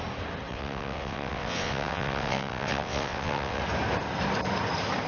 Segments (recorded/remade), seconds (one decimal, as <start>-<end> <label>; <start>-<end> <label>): 0.0-0.5 recorded; 0.5-3.6 remade; 3.6-5.1 recorded